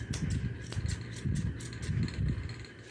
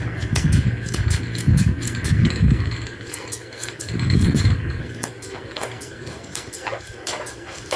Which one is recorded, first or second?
first